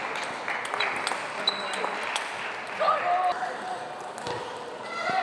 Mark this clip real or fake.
real